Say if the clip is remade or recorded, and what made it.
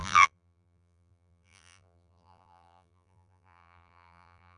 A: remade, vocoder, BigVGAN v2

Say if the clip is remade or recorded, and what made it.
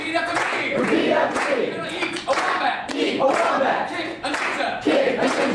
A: remade, vocoder, Vocos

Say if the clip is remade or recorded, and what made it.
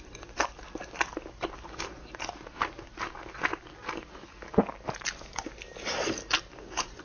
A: recorded